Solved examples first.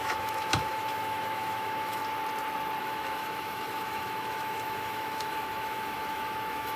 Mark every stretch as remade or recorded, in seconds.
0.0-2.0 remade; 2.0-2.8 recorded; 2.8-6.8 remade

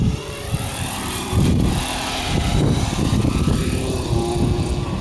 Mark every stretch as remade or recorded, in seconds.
0.0-1.7 remade; 1.7-2.5 recorded; 2.5-4.1 remade; 4.1-5.0 recorded

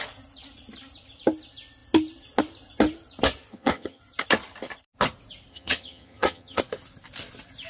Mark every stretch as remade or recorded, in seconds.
0.0-3.5 recorded; 3.5-4.0 remade; 4.0-5.5 recorded; 5.5-6.6 remade; 6.6-7.7 recorded

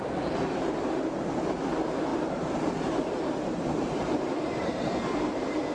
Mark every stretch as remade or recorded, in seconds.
0.0-2.1 recorded; 2.1-4.9 remade; 4.9-5.7 recorded

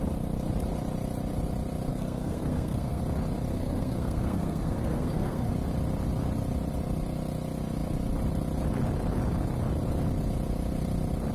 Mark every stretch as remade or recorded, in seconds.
0.0-1.9 recorded; 1.9-3.0 remade; 3.0-3.5 recorded; 3.5-5.5 remade; 5.5-11.3 recorded